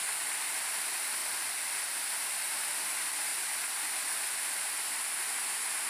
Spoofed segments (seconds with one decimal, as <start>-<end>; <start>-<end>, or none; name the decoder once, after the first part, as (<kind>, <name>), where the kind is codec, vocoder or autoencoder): 0.0-0.7 (vocoder, BigVGAN v2); 1.2-1.9